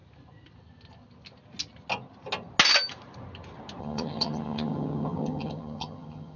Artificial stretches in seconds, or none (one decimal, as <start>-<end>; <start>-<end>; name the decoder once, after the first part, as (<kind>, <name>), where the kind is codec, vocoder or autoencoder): 3.8-6.4 (vocoder, HiFi-GAN)